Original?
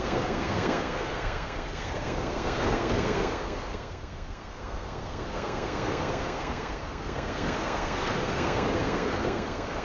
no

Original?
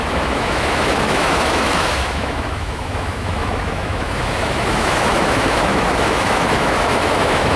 no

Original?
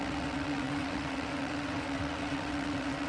no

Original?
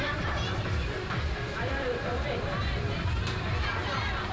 no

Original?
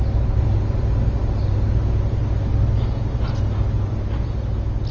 yes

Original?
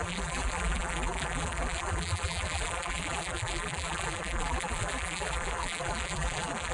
no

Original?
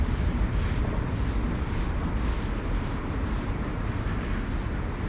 yes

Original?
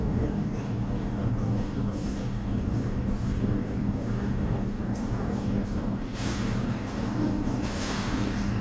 no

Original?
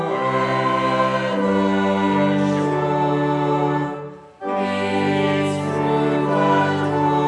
yes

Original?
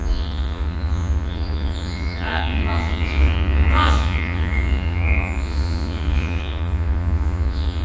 no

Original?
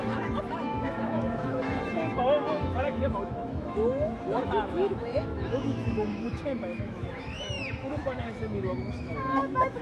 no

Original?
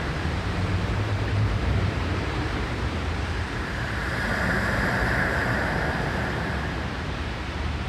no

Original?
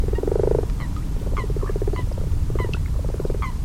no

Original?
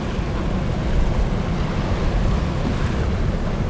yes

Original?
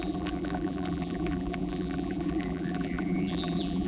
no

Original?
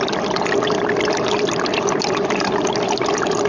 yes